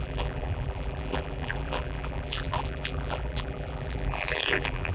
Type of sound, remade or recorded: remade